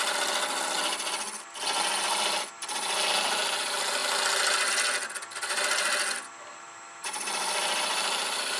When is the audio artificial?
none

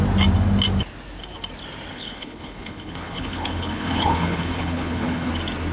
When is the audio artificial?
1.9-5.3 (codec, HILCodec)